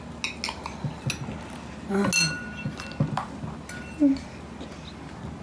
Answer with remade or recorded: recorded